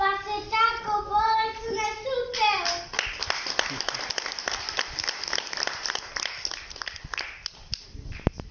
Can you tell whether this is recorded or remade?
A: recorded